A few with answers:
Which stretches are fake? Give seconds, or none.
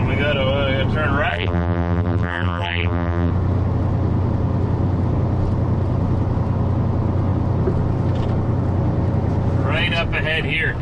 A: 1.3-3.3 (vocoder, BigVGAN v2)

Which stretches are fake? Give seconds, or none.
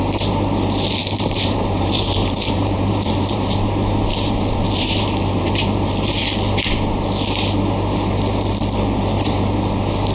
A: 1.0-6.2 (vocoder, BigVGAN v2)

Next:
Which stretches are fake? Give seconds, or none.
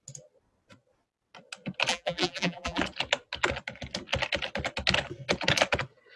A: 1.9-2.8 (vocoder, BigVGAN v2)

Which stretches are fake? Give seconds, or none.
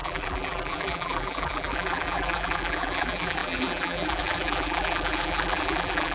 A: 0.0-6.1 (vocoder, BigVGAN v2)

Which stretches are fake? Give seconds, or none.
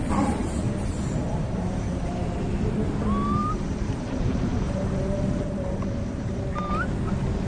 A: 0.4-2.1 (vocoder, BigVGAN v2); 3.4-6.4